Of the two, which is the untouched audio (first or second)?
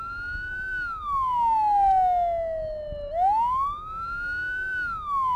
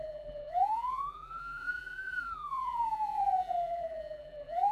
first